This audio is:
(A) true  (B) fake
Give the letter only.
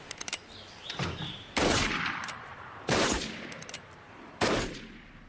B